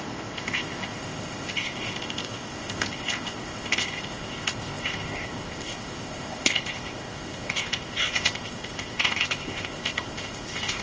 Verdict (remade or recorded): remade